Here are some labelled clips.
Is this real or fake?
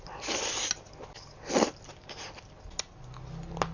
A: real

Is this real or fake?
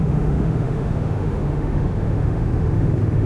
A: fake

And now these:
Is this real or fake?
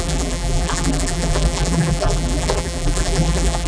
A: fake